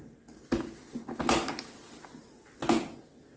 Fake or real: real